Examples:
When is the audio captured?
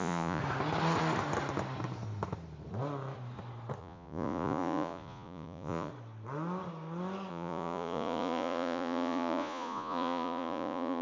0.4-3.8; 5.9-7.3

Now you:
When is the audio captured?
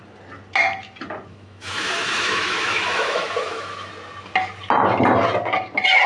0.0-1.3; 3.9-6.1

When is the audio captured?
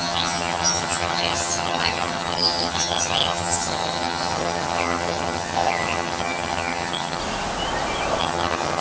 7.2-8.2